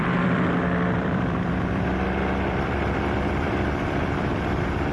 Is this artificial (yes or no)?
yes